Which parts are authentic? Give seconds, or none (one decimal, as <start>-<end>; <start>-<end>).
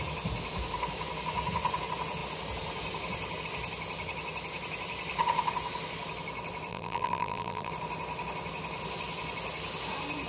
0.0-6.7; 7.7-10.3